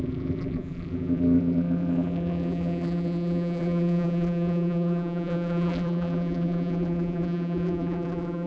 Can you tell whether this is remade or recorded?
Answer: remade